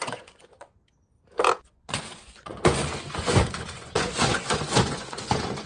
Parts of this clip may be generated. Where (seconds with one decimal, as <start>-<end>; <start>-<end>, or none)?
0.0-0.8; 1.6-5.7